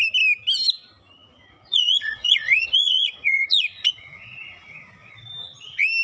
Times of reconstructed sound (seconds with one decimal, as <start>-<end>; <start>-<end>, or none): 1.3-4.8